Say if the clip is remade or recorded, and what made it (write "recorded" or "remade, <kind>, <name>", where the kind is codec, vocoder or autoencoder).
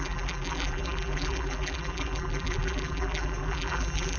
remade, vocoder, BigVGAN v2